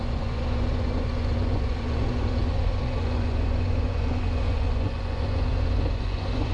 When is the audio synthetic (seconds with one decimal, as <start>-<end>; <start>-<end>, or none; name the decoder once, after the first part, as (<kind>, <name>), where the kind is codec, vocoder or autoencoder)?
0.0-6.5 (vocoder, Vocos)